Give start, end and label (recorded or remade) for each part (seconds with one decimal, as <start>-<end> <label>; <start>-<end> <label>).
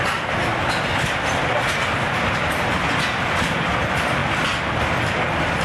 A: 0.0-5.6 recorded